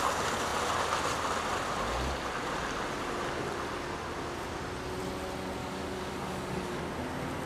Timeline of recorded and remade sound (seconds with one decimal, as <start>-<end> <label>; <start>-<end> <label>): 0.0-5.6 recorded; 5.6-6.8 remade; 6.8-7.5 recorded